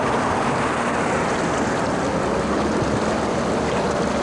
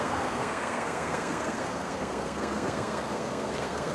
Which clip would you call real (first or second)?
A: first